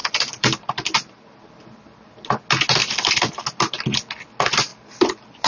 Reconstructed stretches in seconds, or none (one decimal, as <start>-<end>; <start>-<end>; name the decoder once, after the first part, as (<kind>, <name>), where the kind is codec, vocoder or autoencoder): 0.0-1.5 (vocoder, BigVGAN v2)